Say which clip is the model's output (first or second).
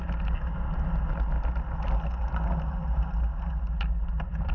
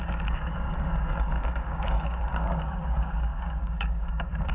second